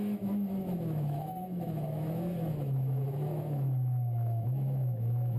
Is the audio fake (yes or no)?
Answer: yes